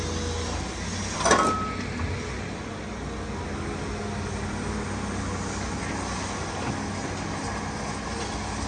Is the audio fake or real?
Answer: real